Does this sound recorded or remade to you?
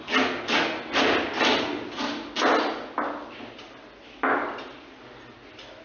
recorded